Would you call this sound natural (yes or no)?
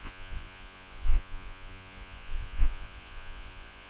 no